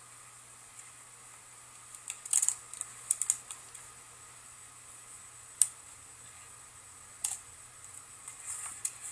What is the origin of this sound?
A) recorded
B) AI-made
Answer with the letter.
A